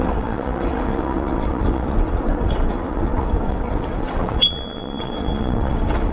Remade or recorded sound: remade